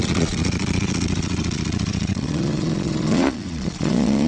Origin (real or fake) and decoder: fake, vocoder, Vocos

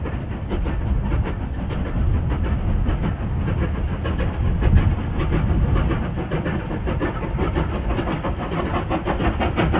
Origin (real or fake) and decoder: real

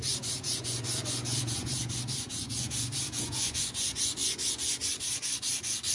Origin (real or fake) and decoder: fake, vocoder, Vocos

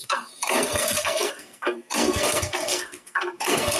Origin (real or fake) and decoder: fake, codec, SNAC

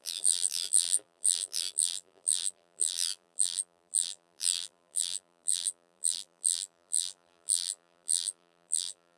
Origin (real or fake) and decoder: fake, vocoder, BigVGAN v2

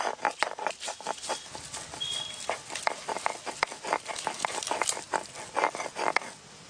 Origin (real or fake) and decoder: real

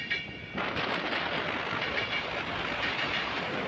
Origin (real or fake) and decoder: real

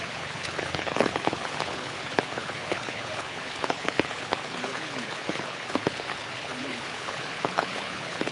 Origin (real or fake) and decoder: fake, codec, HILCodec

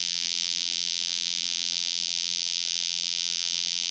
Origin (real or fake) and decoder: fake, vocoder, BigVGAN v2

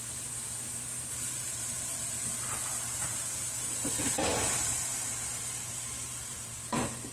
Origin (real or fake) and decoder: fake, vocoder, BigVGAN v2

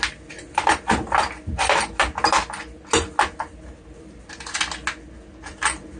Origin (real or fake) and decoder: real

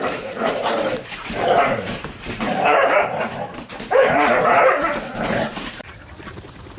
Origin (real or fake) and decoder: fake, vocoder, BigVGAN v2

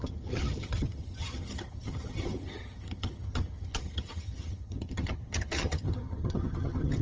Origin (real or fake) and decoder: fake, vocoder, HiFi-GAN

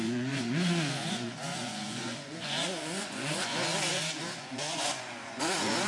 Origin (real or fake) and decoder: fake, vocoder, Vocos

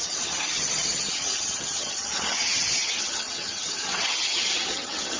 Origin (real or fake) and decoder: fake, vocoder, HiFi-GAN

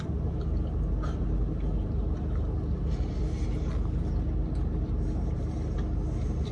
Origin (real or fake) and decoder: real